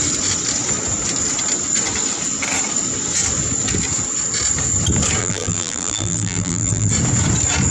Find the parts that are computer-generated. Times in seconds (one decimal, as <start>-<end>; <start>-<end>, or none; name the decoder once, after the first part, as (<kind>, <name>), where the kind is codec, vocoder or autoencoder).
5.2-6.9 (vocoder, BigVGAN v2)